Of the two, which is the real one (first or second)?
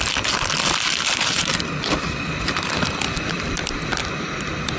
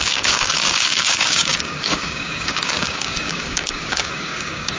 first